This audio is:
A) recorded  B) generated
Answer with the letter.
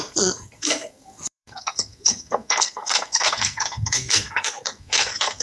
B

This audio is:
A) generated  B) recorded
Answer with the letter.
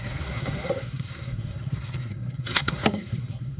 A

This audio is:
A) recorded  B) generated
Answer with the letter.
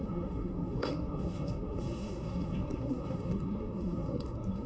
B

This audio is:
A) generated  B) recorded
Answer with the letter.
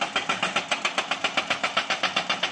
B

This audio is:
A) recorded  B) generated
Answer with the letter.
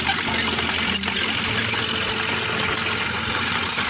A